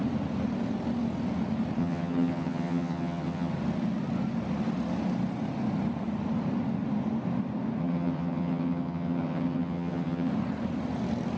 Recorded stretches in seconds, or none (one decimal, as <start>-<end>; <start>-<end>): 0.0-1.8; 3.5-7.8; 10.3-11.4